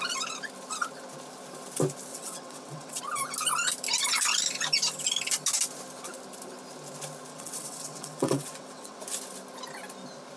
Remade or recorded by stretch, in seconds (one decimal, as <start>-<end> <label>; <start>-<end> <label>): 0.0-2.1 recorded; 2.1-3.0 remade; 3.0-7.3 recorded; 7.3-9.0 remade; 9.0-10.4 recorded